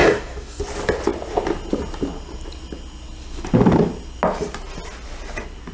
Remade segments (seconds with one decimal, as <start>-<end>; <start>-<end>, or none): 0.0-0.6